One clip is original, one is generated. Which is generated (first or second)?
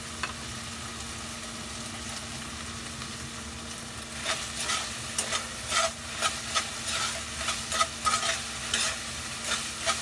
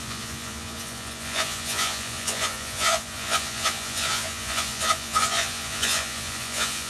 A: second